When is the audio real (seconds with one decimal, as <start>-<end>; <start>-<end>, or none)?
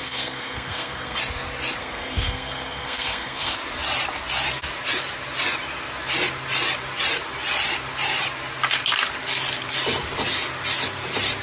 1.2-1.8; 3.5-11.4